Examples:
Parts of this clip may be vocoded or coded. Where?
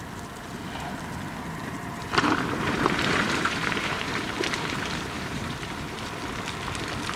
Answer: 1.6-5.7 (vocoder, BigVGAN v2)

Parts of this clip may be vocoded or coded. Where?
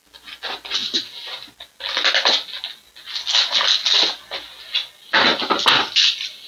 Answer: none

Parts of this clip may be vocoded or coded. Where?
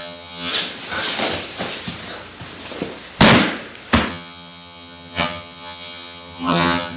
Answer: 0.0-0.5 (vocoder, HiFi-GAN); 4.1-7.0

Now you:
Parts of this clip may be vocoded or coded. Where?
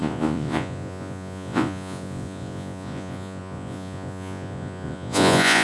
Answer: 0.0-5.6 (vocoder, Vocos)